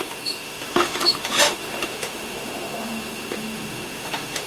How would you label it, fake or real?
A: fake